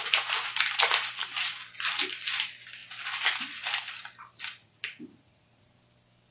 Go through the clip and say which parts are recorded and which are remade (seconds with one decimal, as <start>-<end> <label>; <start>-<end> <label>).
0.0-4.6 recorded; 4.6-5.7 remade; 5.7-6.3 recorded